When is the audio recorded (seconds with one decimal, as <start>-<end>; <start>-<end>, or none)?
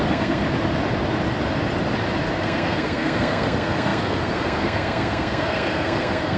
0.4-2.4